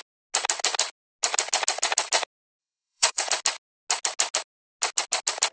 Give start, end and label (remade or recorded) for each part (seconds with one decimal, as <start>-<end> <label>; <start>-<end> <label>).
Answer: 0.0-2.6 recorded; 2.6-3.3 remade; 3.3-5.5 recorded